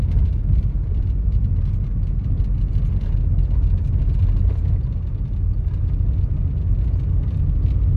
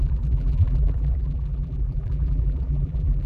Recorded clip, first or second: first